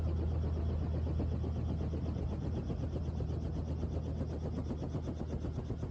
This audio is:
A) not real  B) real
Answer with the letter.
B